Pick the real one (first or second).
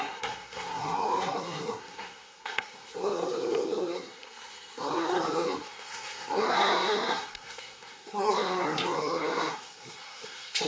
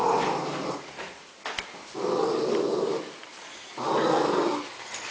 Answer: second